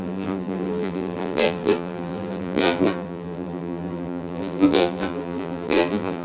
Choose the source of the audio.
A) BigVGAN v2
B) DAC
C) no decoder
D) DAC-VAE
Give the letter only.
A